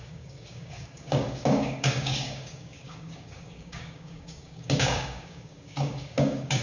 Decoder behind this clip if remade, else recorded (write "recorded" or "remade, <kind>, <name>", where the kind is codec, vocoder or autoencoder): remade, codec, DAC